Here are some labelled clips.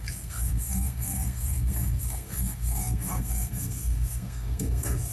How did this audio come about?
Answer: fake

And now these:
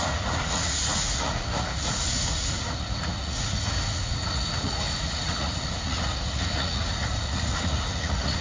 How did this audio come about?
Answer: fake